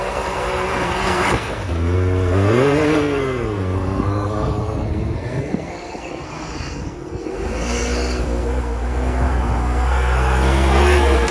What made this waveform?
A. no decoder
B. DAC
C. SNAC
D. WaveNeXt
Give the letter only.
C